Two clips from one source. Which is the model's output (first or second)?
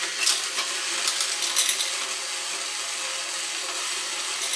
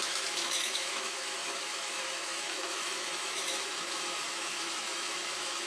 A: second